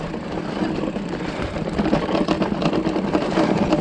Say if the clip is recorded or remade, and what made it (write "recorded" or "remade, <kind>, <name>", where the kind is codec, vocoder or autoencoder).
recorded